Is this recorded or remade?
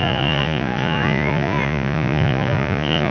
remade